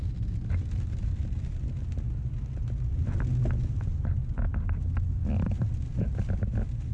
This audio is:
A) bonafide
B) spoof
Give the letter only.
A